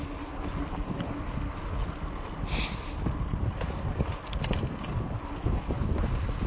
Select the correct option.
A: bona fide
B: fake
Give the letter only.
A